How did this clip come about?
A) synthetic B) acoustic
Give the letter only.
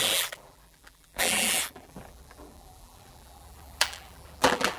A